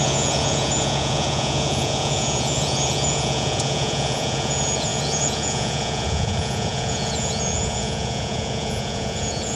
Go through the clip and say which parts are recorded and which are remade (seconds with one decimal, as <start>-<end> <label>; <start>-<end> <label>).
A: 0.0-9.6 remade